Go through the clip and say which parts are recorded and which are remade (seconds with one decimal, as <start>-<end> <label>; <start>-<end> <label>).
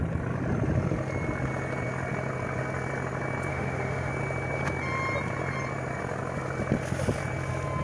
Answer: 0.0-3.5 recorded; 3.5-4.1 remade; 4.1-7.8 recorded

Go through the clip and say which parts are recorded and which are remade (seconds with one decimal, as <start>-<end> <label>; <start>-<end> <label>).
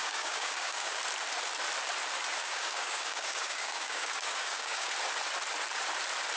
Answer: 0.0-1.0 remade; 1.0-2.4 recorded; 2.4-4.9 remade; 4.9-6.4 recorded